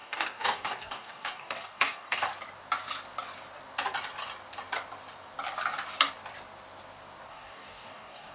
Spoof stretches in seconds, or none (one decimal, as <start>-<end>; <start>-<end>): 0.0-2.3; 7.3-8.3